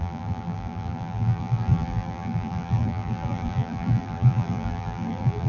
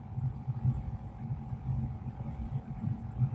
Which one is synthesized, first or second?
first